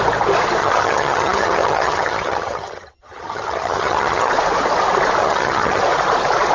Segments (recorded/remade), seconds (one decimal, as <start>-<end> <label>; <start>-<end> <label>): 0.0-0.6 recorded; 0.6-4.3 remade; 4.3-5.2 recorded; 5.2-5.8 remade; 5.8-6.5 recorded